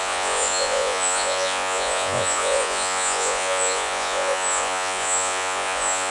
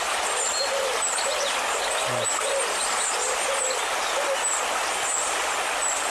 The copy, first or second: first